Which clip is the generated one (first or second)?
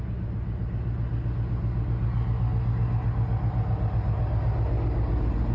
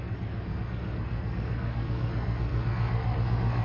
second